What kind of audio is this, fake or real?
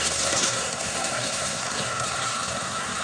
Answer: fake